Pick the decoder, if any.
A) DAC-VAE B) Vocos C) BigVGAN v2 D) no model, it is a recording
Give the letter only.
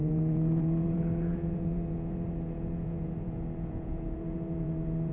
B